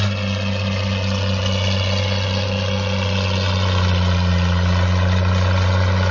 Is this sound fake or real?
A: real